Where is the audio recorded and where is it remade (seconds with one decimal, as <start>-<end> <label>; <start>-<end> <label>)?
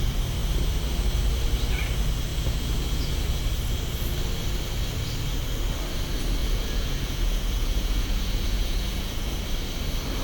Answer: 0.0-2.3 recorded; 2.3-3.4 remade; 3.4-6.4 recorded; 6.4-9.4 remade; 9.4-10.2 recorded